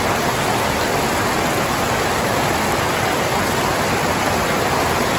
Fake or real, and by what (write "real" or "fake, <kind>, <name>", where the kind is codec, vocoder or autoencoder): real